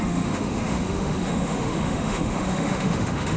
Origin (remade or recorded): remade